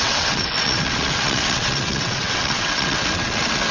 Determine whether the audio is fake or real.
fake